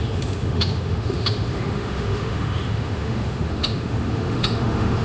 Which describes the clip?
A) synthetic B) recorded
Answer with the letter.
A